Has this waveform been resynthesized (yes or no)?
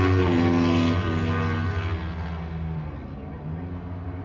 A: no